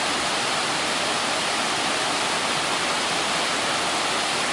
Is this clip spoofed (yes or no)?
no